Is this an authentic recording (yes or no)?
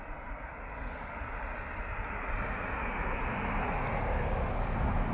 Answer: yes